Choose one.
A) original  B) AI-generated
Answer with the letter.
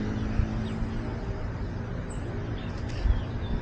A